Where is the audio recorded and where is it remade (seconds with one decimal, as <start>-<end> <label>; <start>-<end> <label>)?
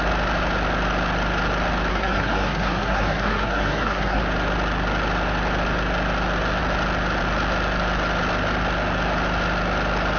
0.0-1.9 recorded; 1.9-4.2 remade; 4.2-10.2 recorded